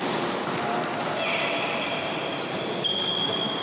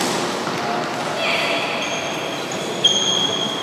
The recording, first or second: second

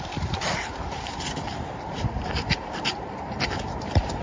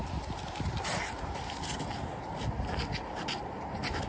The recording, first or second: second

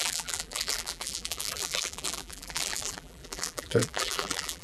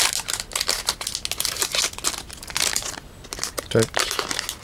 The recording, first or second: second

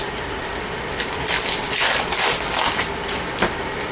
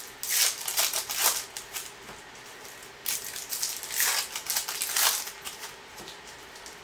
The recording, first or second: second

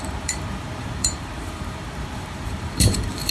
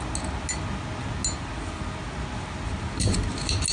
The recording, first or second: second